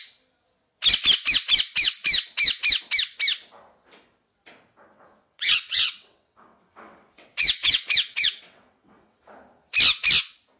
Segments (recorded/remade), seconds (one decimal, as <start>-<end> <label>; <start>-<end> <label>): 0.0-4.9 recorded; 4.9-9.2 remade; 9.2-10.6 recorded